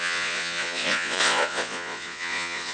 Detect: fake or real fake